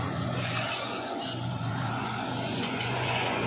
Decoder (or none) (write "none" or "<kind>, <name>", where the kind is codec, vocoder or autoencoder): vocoder, Vocos